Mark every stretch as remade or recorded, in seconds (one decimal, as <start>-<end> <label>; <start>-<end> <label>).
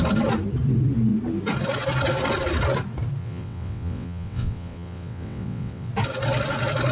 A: 0.0-3.2 recorded; 3.2-5.9 remade; 5.9-6.9 recorded